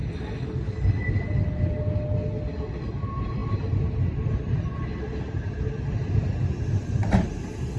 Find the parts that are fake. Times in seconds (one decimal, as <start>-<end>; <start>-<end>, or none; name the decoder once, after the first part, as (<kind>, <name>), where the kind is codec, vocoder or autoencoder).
none